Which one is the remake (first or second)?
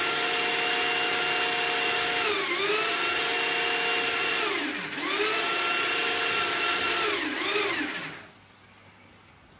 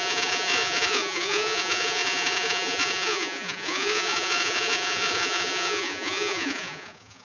second